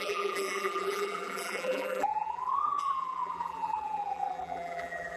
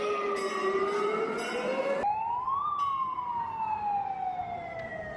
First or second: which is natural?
second